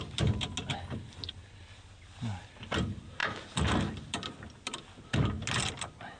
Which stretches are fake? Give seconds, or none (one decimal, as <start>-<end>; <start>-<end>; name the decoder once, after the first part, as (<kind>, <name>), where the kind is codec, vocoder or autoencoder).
none